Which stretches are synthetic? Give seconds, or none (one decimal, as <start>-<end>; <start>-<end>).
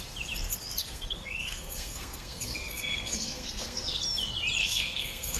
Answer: 0.8-4.0; 4.6-5.4